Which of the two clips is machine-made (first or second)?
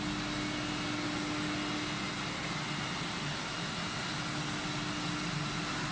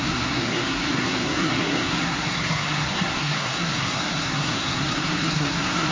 second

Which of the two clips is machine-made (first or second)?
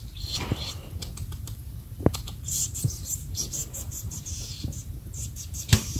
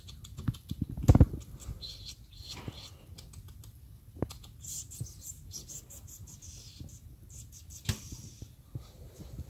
first